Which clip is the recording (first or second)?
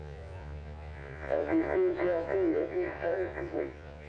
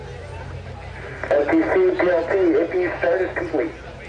second